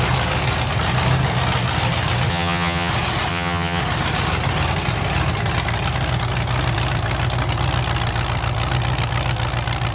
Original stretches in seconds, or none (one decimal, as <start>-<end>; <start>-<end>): 0.0-2.3; 2.9-3.3; 3.8-9.9